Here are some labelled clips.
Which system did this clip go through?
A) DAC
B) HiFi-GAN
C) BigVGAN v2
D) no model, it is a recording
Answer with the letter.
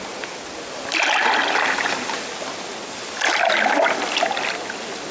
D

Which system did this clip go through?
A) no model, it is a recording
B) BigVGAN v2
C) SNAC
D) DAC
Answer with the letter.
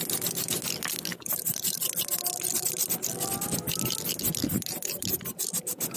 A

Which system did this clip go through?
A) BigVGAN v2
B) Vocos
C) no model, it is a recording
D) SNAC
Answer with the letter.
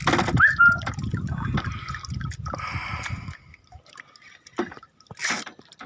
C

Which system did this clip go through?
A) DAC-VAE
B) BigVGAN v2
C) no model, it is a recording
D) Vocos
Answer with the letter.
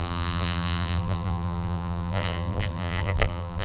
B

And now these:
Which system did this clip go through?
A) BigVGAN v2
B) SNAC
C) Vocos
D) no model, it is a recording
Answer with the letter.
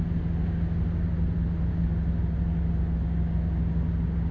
D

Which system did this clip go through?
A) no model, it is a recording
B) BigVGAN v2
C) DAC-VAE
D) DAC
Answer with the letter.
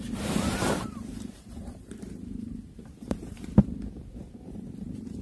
B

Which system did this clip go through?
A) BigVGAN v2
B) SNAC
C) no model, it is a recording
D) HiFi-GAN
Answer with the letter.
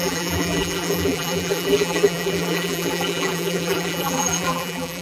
A